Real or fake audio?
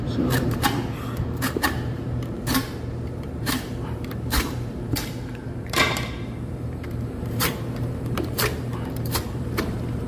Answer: fake